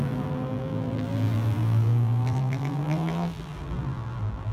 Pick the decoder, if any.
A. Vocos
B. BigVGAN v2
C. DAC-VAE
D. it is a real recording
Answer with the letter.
B